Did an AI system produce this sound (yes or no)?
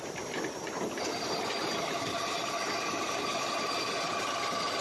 no